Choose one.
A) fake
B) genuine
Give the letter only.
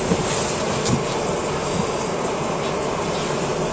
B